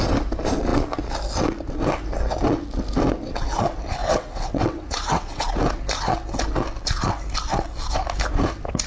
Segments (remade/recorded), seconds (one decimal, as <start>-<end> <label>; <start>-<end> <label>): 0.0-4.0 recorded; 4.0-5.8 remade; 5.8-8.9 recorded